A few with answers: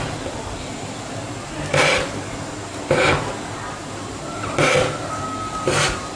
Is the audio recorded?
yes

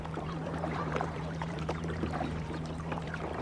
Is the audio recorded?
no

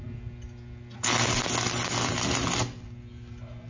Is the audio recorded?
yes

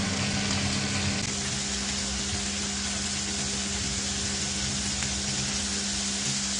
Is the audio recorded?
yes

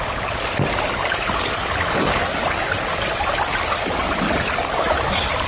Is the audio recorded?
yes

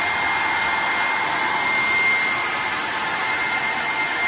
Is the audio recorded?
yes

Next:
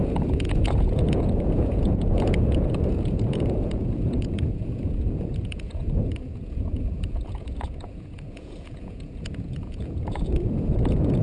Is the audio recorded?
no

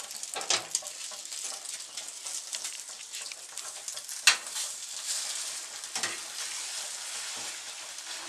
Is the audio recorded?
yes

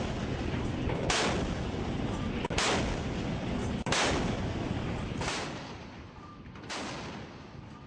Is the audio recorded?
yes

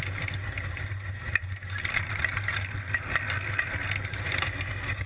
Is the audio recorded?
yes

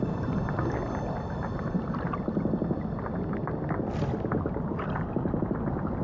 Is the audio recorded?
yes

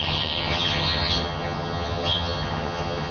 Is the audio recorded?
no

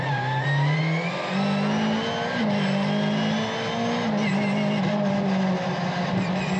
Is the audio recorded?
yes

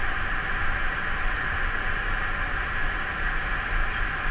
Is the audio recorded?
yes